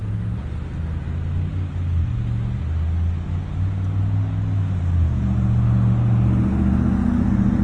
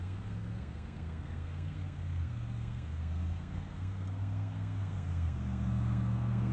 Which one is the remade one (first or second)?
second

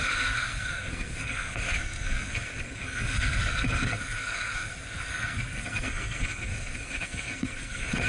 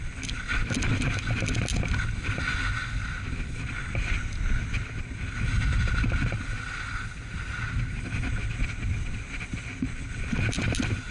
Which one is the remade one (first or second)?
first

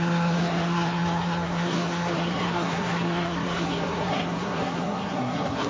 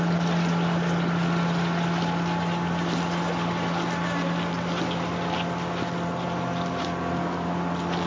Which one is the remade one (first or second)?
first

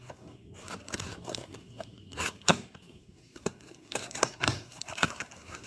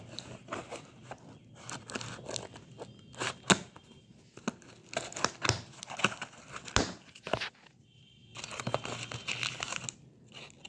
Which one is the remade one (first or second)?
first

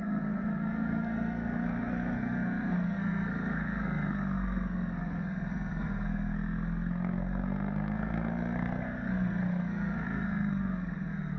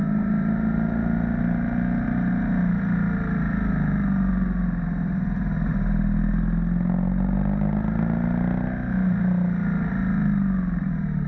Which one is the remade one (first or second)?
first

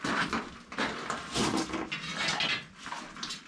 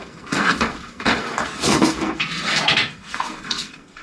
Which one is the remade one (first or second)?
second